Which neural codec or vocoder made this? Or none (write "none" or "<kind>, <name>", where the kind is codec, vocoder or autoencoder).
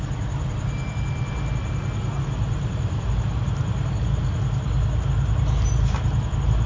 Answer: none